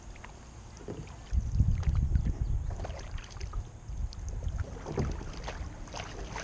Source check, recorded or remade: recorded